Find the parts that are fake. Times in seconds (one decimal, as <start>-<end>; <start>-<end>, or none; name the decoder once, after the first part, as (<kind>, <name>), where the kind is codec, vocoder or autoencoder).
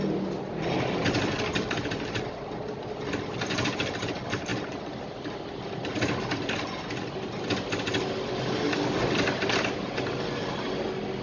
none